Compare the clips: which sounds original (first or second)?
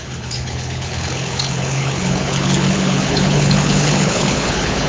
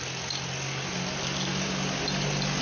second